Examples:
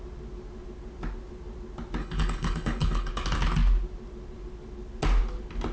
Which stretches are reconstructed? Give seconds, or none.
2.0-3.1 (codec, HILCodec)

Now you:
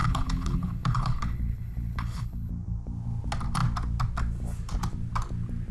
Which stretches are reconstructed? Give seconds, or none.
0.0-2.5 (codec, HILCodec)

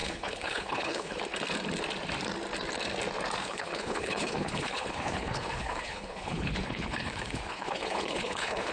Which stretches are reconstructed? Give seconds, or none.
0.0-1.2 (codec, HILCodec); 3.4-8.7

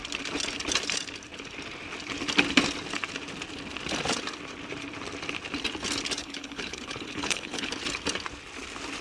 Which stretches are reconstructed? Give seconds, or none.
6.2-7.7 (codec, HILCodec)